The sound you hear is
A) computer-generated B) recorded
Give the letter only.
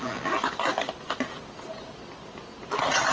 B